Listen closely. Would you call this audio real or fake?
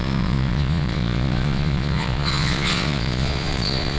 fake